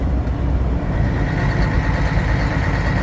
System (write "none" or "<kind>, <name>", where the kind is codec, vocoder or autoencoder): none